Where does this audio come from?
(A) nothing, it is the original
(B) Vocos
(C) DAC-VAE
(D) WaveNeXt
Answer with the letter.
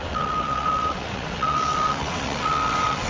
D